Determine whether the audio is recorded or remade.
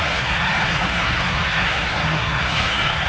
remade